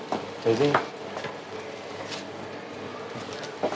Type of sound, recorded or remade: recorded